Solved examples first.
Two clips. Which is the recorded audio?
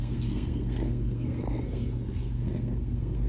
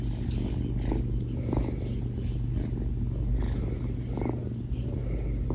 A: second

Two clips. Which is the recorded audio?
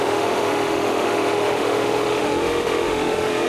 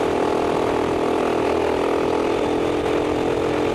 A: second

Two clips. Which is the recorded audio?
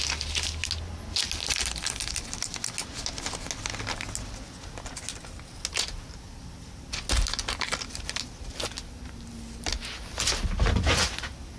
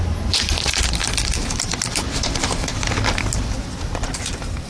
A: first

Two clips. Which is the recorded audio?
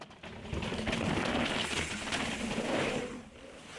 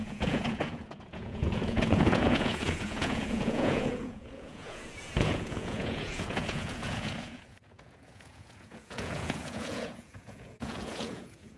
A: first